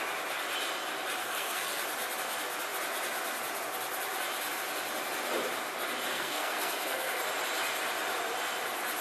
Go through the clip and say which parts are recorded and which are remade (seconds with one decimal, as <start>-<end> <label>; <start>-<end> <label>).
0.0-1.2 recorded; 1.2-1.8 remade; 1.8-6.1 recorded; 6.1-7.2 remade; 7.2-9.0 recorded